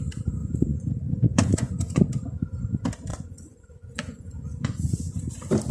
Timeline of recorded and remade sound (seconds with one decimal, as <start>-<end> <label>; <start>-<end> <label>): 0.0-0.4 recorded; 0.4-2.0 remade; 2.0-3.1 recorded; 3.1-5.3 remade; 5.3-5.7 recorded